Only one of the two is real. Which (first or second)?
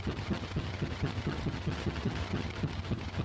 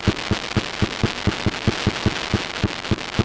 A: second